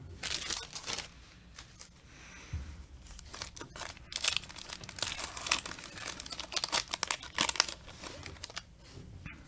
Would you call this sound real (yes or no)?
yes